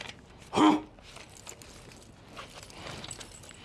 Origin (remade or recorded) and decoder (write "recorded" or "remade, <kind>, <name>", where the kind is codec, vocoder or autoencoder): recorded